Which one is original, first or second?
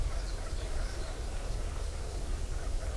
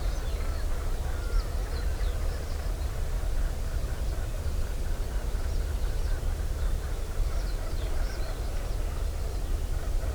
second